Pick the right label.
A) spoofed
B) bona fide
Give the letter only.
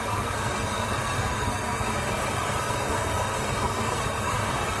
A